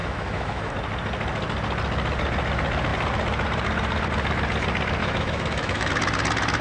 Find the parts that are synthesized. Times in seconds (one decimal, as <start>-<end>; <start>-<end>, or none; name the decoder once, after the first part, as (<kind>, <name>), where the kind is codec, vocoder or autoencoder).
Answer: 0.0-0.7 (autoencoder, DAC-VAE); 5.0-5.9